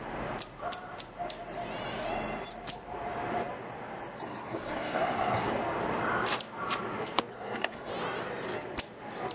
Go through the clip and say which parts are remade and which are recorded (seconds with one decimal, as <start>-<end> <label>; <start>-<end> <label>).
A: 0.0-4.2 recorded; 4.2-5.5 remade; 5.5-7.3 recorded; 7.3-7.9 remade; 7.9-9.3 recorded